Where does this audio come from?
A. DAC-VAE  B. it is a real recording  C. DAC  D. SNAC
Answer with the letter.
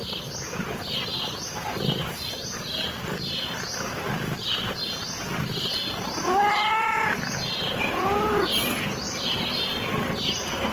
B